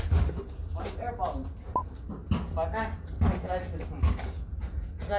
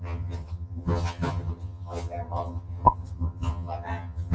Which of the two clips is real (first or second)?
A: first